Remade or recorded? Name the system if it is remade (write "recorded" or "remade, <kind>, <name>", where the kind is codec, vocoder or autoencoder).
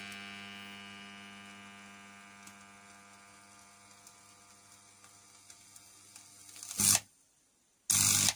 recorded